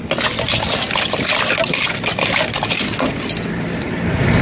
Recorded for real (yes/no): yes